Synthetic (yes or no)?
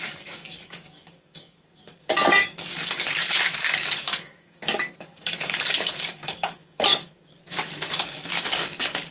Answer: yes